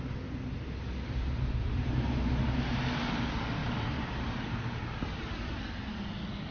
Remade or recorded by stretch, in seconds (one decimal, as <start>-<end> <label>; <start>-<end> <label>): 0.0-0.9 recorded; 0.9-2.8 remade; 2.8-3.6 recorded; 3.6-5.6 remade; 5.6-6.5 recorded